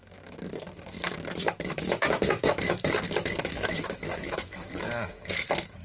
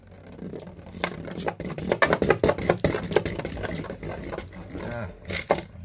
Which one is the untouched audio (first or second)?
second